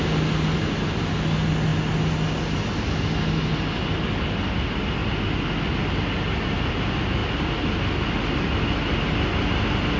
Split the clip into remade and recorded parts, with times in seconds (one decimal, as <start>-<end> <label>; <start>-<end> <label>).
0.0-10.0 recorded